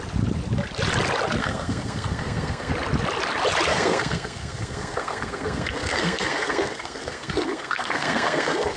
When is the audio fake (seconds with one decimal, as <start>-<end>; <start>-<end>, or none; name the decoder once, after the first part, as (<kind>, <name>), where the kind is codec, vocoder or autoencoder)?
1.4-2.7 (codec, SNAC); 3.7-8.8

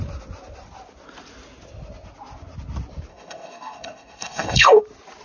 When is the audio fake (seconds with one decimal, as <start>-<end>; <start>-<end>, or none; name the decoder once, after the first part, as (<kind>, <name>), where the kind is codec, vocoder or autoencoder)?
3.1-4.8 (codec, SNAC)

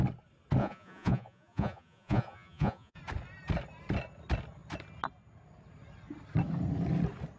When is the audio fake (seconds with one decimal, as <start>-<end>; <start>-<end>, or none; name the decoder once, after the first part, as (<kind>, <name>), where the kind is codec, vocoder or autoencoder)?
0.6-3.0 (vocoder, Vocos)

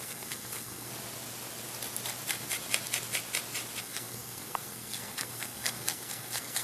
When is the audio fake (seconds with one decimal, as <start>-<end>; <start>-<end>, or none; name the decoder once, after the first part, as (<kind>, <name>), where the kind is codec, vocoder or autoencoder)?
0.0-0.9 (codec, SNAC); 3.8-6.6

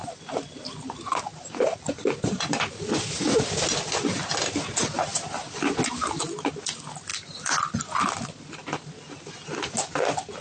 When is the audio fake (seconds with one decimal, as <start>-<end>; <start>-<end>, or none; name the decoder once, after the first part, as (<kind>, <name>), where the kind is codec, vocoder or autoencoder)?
0.0-2.9 (vocoder, BigVGAN v2); 5.1-5.7; 7.1-7.8

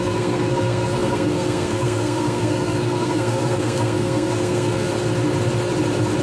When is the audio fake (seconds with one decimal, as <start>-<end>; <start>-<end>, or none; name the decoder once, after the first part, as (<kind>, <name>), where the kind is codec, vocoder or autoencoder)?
0.0-4.9 (codec, SNAC)

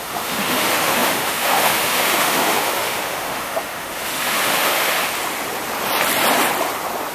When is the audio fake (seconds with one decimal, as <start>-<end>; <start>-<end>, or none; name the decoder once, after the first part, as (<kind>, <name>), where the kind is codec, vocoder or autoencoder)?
0.0-5.0 (autoencoder, DAC-VAE)